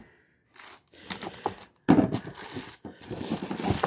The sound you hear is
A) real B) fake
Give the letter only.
A